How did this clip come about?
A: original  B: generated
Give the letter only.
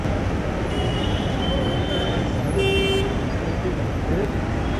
A